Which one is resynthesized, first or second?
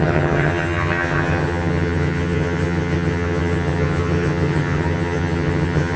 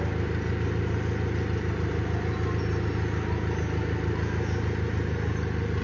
first